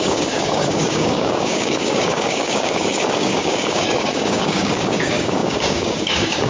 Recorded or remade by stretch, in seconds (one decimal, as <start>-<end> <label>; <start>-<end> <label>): 0.0-6.5 remade